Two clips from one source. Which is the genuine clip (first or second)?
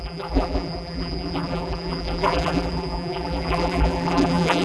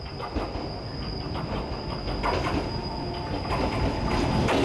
second